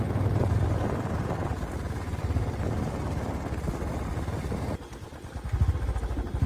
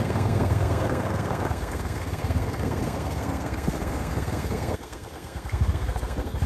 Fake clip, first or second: second